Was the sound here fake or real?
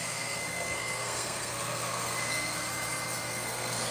fake